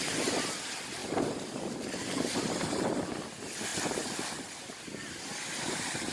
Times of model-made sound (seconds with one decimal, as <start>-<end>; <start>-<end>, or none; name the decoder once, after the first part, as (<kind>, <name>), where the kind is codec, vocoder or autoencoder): none